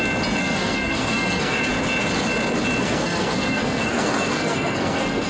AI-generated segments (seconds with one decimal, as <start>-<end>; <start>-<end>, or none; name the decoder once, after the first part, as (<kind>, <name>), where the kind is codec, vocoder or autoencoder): 0.4-1.6 (codec, SNAC); 2.8-5.3